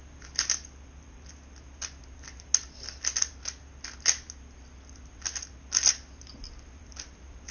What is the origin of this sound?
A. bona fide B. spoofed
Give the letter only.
A